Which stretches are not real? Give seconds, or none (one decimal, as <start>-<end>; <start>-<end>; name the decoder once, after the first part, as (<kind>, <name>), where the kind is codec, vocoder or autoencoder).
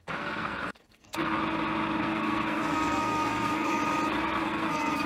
0.0-1.4 (codec, SNAC); 2.0-3.8; 4.4-5.1